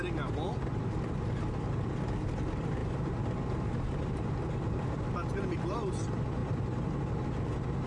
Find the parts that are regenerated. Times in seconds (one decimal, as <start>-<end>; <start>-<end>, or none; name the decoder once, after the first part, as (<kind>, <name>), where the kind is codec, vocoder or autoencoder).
2.8-5.0 (vocoder, BigVGAN v2); 6.4-7.0